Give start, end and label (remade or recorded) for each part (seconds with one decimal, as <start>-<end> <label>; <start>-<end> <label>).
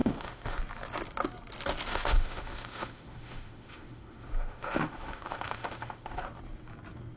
0.0-0.6 remade; 0.6-1.9 recorded; 1.9-6.2 remade; 6.2-7.2 recorded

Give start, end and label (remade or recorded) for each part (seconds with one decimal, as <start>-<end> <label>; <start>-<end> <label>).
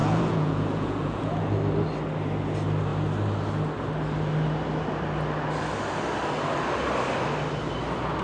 0.0-1.4 remade; 1.4-8.2 recorded